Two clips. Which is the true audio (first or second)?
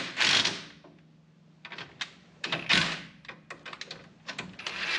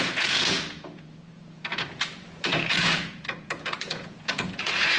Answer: first